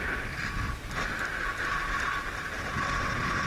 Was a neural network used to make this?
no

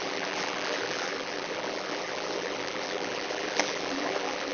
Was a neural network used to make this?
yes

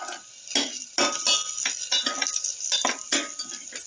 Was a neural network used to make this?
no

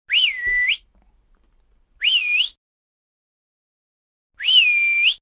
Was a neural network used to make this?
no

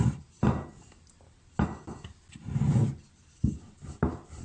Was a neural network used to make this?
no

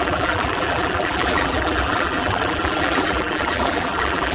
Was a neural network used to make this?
yes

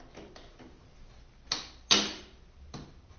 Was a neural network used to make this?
no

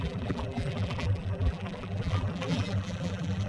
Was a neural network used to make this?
yes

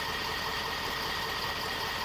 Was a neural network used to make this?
yes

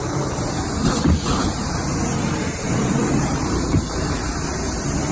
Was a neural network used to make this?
yes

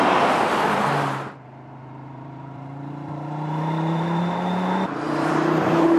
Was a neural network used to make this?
yes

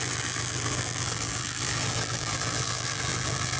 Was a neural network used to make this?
yes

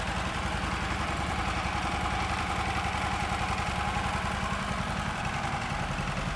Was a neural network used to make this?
yes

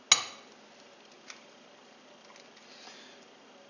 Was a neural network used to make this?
no